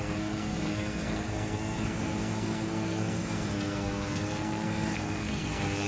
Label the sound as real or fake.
fake